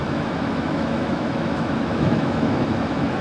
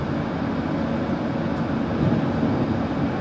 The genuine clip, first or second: second